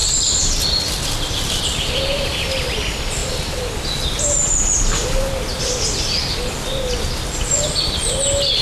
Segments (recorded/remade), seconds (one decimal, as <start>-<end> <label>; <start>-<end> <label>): 0.0-1.6 remade; 1.6-3.2 recorded; 3.2-4.1 remade; 4.1-8.6 recorded